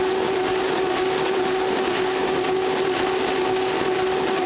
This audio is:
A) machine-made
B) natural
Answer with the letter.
B